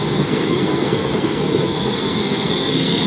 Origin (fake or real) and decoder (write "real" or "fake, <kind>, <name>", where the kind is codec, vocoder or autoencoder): fake, codec, SNAC